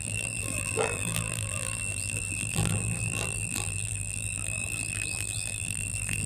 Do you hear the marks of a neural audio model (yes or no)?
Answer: yes